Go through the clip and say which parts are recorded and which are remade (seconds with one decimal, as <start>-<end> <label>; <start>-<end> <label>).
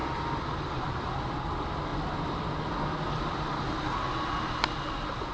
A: 0.0-0.8 recorded; 0.8-1.9 remade; 1.9-5.3 recorded